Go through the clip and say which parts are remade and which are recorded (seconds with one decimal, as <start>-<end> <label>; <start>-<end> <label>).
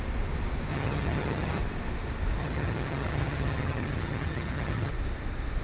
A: 0.0-0.7 recorded; 0.7-1.6 remade; 1.6-2.4 recorded; 2.4-4.9 remade; 4.9-5.6 recorded